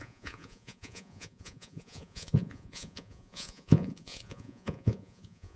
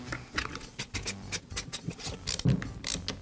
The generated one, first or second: first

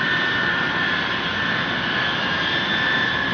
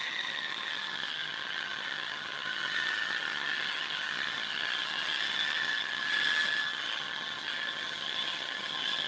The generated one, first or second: second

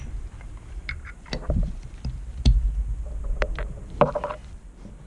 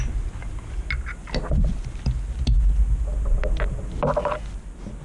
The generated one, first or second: first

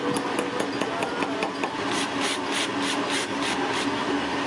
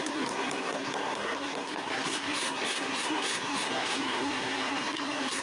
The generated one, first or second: second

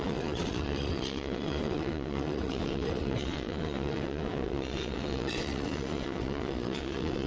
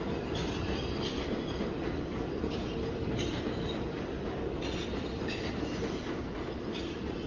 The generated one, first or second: first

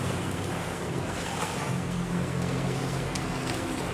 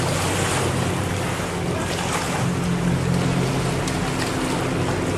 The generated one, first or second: first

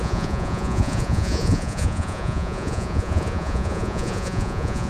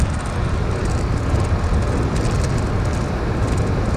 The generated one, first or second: first